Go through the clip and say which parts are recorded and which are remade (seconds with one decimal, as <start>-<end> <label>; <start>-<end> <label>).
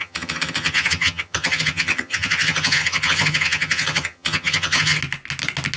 0.0-5.0 remade; 5.0-5.8 recorded